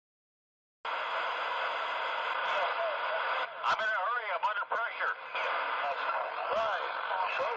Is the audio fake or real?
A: real